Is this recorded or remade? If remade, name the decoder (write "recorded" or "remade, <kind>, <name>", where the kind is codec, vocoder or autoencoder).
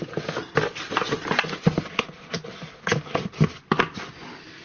recorded